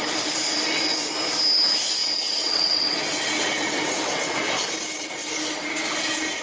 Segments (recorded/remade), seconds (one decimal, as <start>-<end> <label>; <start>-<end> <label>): 0.0-2.0 recorded; 2.0-4.4 remade; 4.4-6.4 recorded